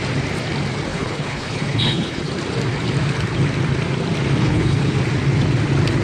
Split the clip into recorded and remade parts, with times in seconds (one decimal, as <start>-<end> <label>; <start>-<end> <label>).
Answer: 0.0-0.9 recorded; 0.9-2.2 remade; 2.2-4.4 recorded; 4.4-4.9 remade; 4.9-6.0 recorded